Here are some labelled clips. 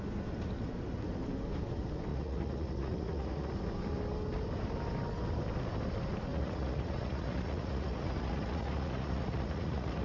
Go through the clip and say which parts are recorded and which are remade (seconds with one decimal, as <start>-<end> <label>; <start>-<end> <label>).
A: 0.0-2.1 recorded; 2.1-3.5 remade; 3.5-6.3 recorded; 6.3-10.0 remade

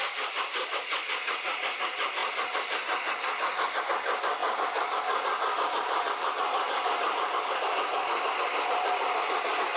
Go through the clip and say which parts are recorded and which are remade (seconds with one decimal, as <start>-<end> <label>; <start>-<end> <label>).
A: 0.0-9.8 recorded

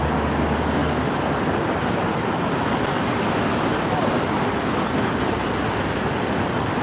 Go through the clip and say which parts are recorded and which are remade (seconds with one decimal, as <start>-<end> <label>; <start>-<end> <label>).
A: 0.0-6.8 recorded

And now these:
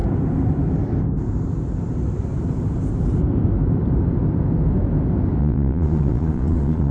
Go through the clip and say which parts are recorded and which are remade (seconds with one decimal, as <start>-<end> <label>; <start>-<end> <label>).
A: 0.0-5.4 recorded; 5.4-6.9 remade

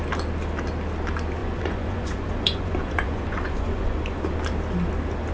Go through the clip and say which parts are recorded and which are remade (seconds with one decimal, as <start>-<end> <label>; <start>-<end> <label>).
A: 0.0-1.4 recorded; 1.4-4.2 remade; 4.2-5.3 recorded

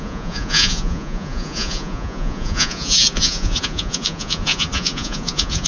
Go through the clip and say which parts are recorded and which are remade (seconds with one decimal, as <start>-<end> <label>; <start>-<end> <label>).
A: 0.0-5.7 remade

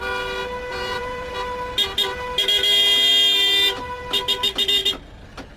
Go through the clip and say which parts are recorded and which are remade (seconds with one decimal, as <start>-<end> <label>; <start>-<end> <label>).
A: 0.0-0.7 recorded; 0.7-1.3 remade; 1.3-5.6 recorded

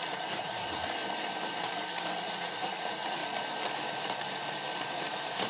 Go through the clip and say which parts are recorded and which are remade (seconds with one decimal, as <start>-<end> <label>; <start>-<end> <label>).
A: 0.0-1.0 remade; 1.0-2.2 recorded; 2.2-3.2 remade; 3.2-4.9 recorded; 4.9-5.5 remade